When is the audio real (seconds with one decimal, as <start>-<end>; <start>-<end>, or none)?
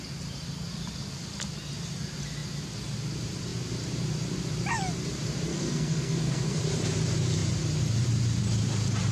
0.0-5.5; 6.6-9.1